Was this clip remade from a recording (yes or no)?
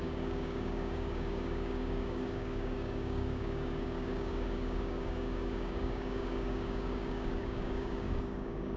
yes